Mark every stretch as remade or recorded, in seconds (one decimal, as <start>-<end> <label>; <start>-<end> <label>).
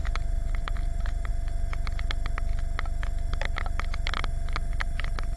0.0-1.3 remade; 1.3-5.4 recorded